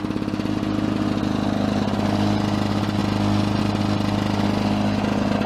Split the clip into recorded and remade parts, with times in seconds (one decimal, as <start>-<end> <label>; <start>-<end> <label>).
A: 0.0-5.5 recorded